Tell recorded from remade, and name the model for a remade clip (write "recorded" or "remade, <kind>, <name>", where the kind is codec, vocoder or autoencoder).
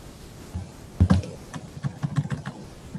recorded